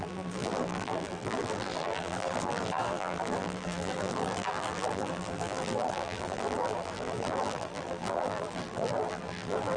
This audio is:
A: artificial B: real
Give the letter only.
A